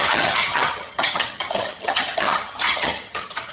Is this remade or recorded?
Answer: remade